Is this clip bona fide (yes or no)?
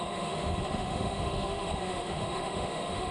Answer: no